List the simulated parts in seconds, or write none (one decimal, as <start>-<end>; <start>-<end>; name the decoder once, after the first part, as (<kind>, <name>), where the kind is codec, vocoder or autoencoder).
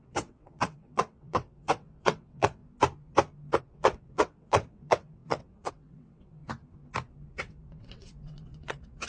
0.0-2.6 (vocoder, WaveNeXt); 3.6-6.4; 7.3-9.1